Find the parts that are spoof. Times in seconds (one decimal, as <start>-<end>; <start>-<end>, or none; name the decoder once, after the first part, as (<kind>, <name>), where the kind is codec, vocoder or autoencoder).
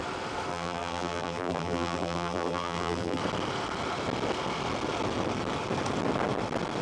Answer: 0.5-3.2 (vocoder, BigVGAN v2)